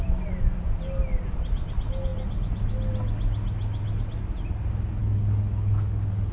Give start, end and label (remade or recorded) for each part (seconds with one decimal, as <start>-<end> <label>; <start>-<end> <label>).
0.0-5.0 recorded; 5.0-6.3 remade